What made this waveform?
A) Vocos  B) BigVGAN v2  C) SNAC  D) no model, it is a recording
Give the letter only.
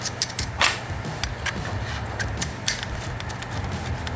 D